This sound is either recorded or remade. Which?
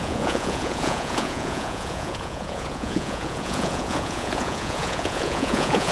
remade